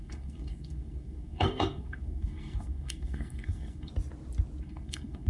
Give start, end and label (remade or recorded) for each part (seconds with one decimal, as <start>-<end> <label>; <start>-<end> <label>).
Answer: 0.0-3.9 remade; 3.9-4.6 recorded; 4.6-5.3 remade